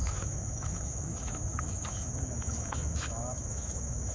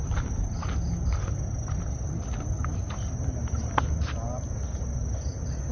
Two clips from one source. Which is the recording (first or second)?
second